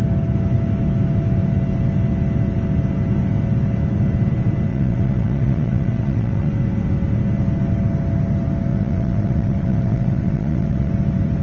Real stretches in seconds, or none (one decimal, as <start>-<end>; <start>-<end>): 0.0-4.7; 6.5-8.7; 10.9-11.4